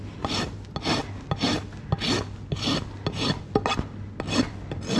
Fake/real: real